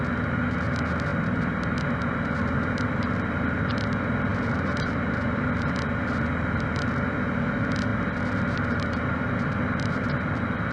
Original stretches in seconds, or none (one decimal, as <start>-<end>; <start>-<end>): 0.0-4.3; 5.4-10.7

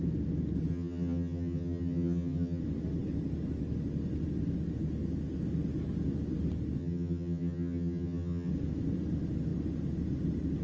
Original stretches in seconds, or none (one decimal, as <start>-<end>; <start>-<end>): 0.0-0.7; 2.6-6.8; 8.5-10.6

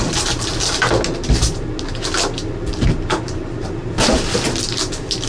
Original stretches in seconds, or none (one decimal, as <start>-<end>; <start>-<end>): 0.0-5.3